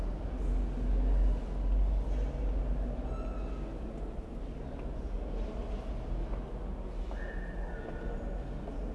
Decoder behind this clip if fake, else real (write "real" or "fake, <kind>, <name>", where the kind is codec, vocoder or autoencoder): real